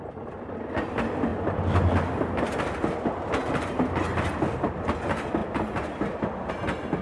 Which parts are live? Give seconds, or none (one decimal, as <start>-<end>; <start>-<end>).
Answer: 0.0-7.0